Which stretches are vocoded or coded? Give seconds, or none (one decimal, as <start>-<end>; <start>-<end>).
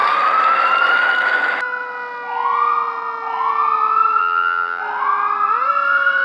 4.2-4.8